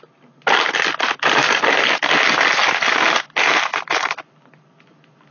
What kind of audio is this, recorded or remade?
recorded